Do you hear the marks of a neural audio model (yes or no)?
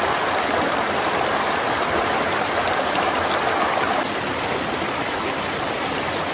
no